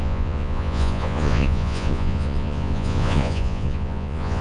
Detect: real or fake fake